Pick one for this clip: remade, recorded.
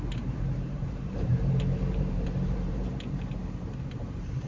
remade